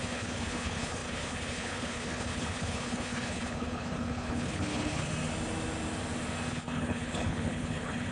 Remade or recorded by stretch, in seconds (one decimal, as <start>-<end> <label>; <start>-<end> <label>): 0.0-5.1 remade; 5.1-6.5 recorded; 6.5-8.1 remade

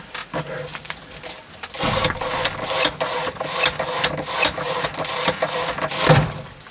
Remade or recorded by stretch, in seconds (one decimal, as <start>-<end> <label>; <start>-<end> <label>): 0.0-6.7 recorded

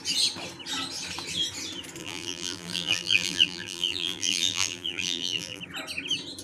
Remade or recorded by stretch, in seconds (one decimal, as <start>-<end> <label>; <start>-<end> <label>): 0.0-2.0 recorded; 2.0-5.6 remade; 5.6-6.4 recorded

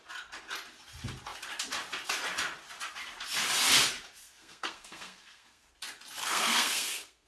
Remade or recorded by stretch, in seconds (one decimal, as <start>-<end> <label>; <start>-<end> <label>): 0.0-4.2 recorded; 4.2-5.7 remade; 5.7-6.2 recorded; 6.2-7.3 remade

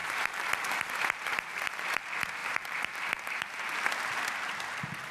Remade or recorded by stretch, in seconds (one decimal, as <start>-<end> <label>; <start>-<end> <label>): 0.0-2.0 remade; 2.0-2.4 recorded; 2.4-3.6 remade; 3.6-5.1 recorded